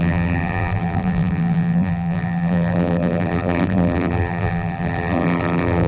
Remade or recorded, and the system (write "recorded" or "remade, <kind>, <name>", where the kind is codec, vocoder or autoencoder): remade, vocoder, BigVGAN v2